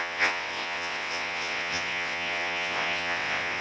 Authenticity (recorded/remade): remade